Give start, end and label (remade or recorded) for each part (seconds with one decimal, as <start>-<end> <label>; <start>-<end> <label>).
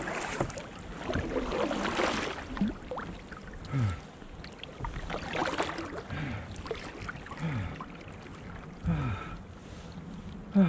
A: 0.0-10.7 recorded